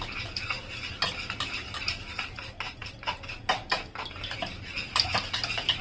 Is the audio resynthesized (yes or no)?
no